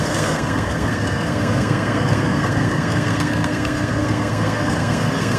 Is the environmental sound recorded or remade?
remade